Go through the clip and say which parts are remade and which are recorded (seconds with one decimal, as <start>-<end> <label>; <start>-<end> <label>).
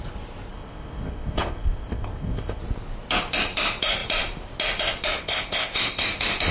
0.0-0.5 recorded; 0.5-2.6 remade; 2.6-5.2 recorded; 5.2-6.1 remade; 6.1-6.5 recorded